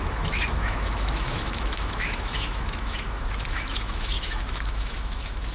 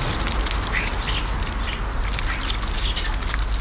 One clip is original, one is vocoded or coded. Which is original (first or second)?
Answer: second